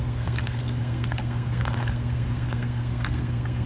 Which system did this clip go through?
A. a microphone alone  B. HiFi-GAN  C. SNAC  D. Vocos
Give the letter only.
C